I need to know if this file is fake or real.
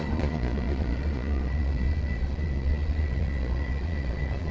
fake